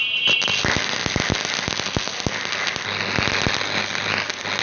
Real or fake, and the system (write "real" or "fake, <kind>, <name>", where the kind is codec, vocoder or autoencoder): real